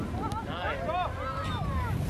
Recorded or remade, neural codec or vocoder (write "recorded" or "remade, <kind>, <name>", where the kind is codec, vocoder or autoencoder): recorded